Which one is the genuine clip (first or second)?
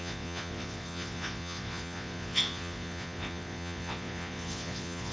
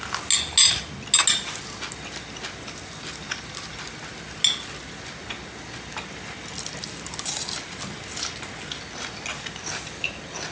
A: second